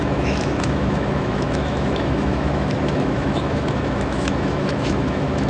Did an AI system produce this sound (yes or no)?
yes